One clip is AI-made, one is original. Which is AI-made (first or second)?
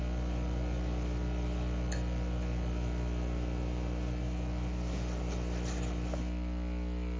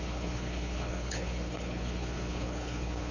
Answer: second